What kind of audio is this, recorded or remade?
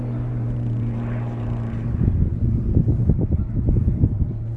remade